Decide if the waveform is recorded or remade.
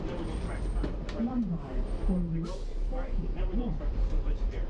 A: remade